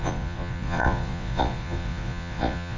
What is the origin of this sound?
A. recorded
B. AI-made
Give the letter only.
B